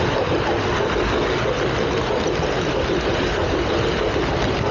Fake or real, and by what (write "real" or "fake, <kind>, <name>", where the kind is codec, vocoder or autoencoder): real